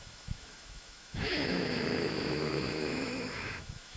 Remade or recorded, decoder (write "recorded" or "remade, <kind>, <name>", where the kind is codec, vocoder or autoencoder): remade, autoencoder, DAC-VAE